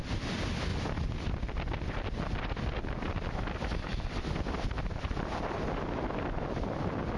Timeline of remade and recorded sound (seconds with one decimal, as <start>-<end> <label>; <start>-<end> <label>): 0.0-0.7 recorded; 0.7-2.6 remade; 2.6-3.9 recorded; 3.9-4.9 remade; 4.9-7.2 recorded